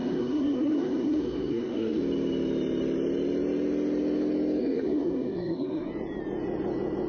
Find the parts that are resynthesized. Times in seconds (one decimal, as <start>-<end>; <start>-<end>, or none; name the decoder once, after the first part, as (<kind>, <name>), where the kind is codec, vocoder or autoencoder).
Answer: 0.0-2.0 (codec, SNAC); 4.6-5.9